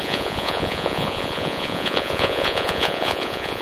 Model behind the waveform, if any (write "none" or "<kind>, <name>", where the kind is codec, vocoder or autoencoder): vocoder, Vocos